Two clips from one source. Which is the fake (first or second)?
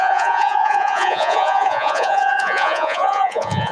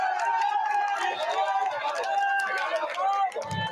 first